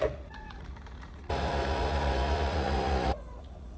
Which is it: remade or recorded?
remade